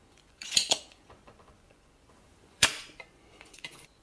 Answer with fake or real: fake